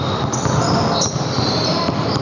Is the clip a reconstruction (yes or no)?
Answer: no